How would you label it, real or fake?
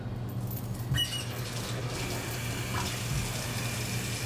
real